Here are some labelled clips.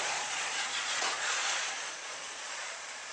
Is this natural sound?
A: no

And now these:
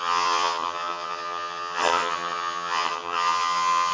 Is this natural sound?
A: no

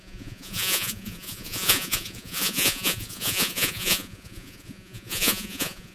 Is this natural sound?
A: no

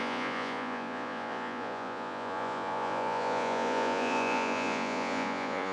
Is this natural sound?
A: no